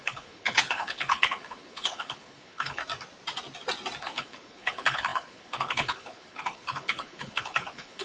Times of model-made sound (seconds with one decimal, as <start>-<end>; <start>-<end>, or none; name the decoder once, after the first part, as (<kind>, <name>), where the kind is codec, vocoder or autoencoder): 0.0-2.8 (codec, HILCodec); 4.0-8.0